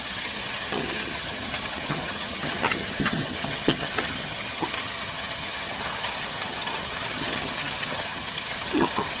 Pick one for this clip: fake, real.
fake